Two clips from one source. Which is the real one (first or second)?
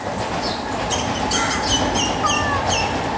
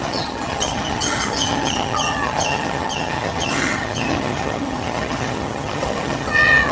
first